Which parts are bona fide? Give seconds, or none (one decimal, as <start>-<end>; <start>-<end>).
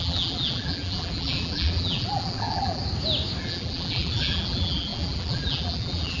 2.8-3.4